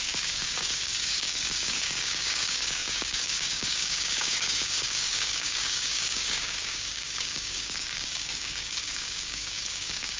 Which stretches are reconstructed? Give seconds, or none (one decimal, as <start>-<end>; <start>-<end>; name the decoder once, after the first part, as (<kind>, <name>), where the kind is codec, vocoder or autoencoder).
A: 0.0-10.2 (codec, DAC)